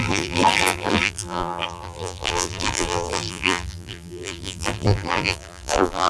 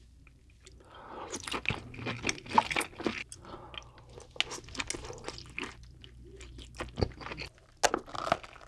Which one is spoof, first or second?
first